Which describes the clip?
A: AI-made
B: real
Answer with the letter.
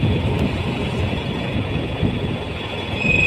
A